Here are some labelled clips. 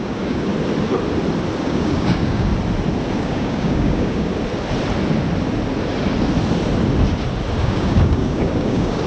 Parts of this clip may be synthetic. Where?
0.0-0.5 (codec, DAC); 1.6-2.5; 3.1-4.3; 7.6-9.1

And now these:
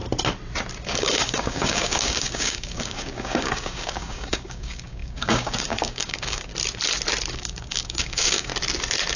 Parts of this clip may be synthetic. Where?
0.8-6.5 (codec, DAC); 7.3-8.5

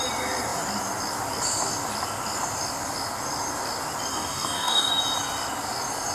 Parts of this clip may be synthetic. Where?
4.1-4.9 (codec, DAC)